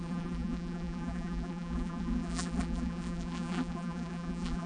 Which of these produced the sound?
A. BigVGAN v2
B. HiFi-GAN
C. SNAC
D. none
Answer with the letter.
A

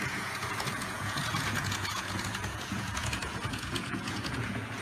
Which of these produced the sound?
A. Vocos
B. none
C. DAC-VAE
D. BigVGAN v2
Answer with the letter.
A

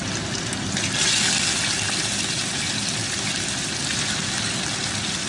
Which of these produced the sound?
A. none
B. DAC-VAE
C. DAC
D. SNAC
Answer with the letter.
A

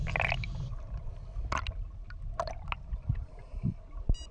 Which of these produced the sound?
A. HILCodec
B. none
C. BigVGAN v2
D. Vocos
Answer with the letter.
B